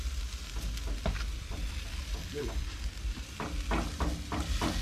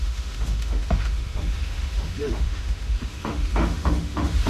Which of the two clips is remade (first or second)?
second